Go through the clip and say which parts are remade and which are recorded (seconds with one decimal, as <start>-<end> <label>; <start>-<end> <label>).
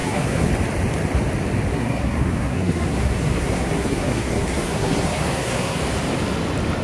0.0-0.5 remade; 0.5-1.7 recorded; 1.7-5.8 remade; 5.8-6.8 recorded